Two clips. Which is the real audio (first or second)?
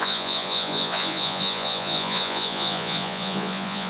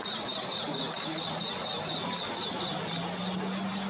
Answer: second